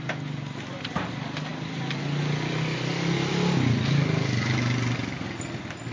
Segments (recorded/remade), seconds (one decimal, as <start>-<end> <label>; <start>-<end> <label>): 0.0-5.9 recorded